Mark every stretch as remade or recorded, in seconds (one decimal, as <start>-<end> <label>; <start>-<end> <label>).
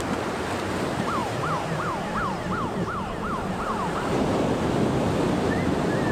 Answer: 0.0-1.2 recorded; 1.2-4.7 remade; 4.7-6.1 recorded